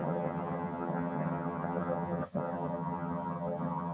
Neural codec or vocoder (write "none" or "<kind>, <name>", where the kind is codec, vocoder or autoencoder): vocoder, HiFi-GAN